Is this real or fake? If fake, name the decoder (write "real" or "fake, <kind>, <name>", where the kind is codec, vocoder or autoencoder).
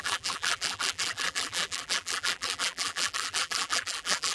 fake, vocoder, BigVGAN v2